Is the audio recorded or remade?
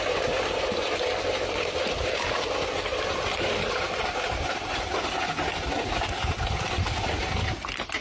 recorded